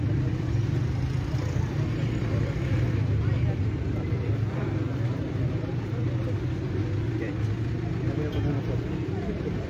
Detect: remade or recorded recorded